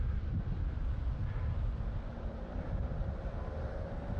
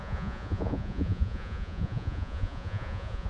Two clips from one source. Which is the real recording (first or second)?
first